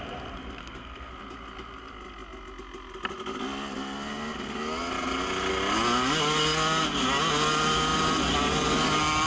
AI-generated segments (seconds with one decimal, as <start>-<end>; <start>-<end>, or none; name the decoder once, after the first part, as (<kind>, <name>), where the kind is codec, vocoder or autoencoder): 0.6-1.1 (codec, SNAC)